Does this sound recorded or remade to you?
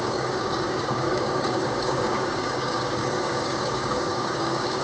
remade